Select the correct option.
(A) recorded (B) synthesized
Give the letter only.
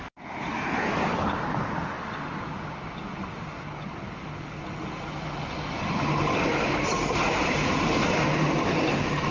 A